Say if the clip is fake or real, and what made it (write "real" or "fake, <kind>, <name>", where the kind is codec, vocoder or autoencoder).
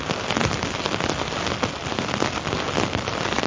real